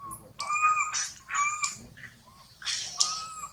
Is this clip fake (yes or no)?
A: no